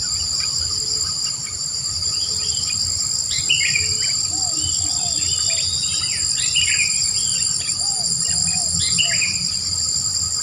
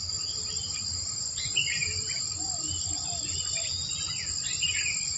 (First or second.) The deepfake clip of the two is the second